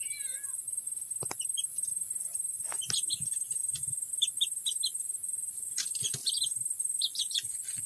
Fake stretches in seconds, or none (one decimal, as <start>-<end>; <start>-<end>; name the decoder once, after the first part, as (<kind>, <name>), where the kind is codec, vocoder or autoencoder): 0.0-6.2 (vocoder, BigVGAN v2); 7.2-7.9

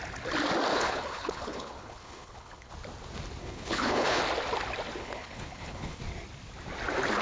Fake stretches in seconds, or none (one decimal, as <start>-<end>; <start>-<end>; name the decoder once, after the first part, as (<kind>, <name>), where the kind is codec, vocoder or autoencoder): 0.7-2.7 (codec, HILCodec); 3.4-4.2; 5.0-6.0

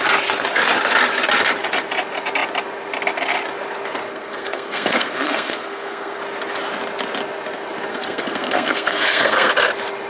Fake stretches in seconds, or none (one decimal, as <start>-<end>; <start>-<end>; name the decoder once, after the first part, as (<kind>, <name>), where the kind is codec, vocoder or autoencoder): 4.1-6.2 (codec, SNAC); 7.9-9.5

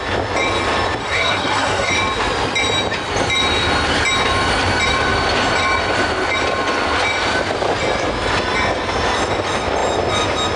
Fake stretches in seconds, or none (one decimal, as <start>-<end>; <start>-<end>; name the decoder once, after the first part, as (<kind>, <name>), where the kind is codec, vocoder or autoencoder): 1.0-1.9 (codec, SNAC)

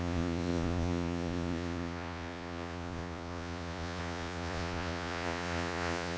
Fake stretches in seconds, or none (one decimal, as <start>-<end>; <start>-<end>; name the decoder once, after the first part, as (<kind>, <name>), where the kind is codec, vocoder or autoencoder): 0.0-6.2 (vocoder, Vocos)

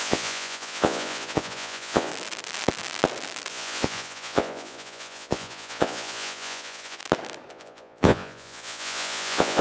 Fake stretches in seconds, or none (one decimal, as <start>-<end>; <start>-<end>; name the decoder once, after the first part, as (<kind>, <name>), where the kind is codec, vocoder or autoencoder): 0.0-2.1 (vocoder, Vocos); 3.5-7.0; 7.5-9.6